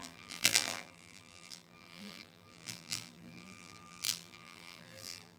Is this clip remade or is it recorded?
remade